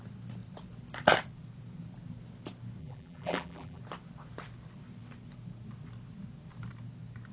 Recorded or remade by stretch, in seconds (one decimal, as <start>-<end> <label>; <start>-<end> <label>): 0.0-2.8 recorded; 2.8-3.8 remade; 3.8-7.3 recorded